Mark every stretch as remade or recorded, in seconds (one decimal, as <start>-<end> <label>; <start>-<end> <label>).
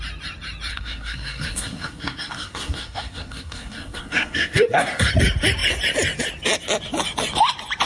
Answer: 0.0-0.7 recorded; 0.7-5.1 remade; 5.1-7.9 recorded